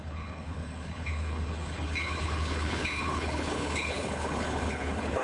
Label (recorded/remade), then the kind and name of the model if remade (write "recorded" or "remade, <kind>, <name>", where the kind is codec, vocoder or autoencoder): remade, codec, HILCodec